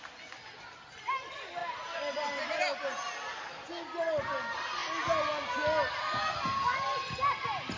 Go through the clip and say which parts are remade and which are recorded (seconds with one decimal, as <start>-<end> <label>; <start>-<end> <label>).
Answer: 0.0-7.8 recorded